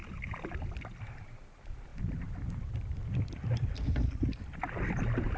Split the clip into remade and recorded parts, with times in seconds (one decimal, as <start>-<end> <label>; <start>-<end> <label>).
0.0-1.9 remade; 1.9-5.4 recorded